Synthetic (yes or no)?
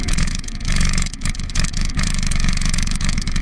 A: yes